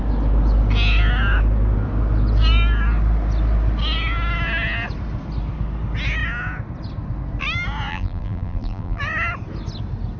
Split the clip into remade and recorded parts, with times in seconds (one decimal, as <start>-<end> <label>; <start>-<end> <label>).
0.0-7.9 recorded; 7.9-9.0 remade; 9.0-10.2 recorded